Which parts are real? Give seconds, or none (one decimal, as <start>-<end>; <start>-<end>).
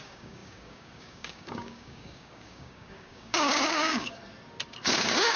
4.2-4.9